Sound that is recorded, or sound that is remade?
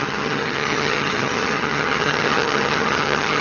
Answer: remade